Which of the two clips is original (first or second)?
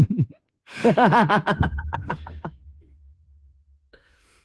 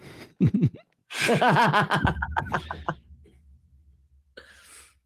second